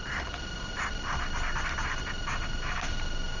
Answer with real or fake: real